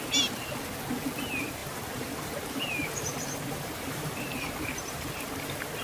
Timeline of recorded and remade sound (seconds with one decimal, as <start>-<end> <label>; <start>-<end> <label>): 0.0-1.6 recorded; 1.6-5.1 remade; 5.1-5.8 recorded